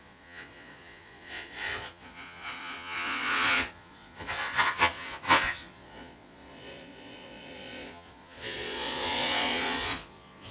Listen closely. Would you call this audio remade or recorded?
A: remade